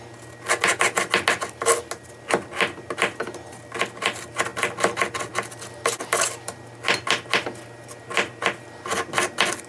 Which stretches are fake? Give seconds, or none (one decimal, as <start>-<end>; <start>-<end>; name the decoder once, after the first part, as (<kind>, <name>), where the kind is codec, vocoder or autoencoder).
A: none